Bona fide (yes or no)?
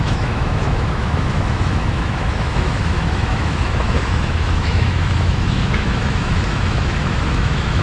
no